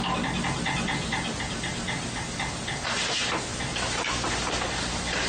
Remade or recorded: recorded